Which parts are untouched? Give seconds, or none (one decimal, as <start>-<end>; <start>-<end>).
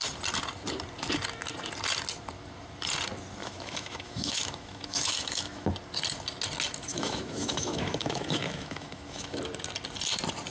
0.0-3.4; 5.7-6.9; 9.4-10.5